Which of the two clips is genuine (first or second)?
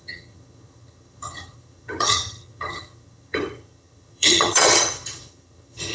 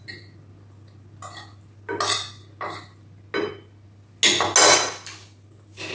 second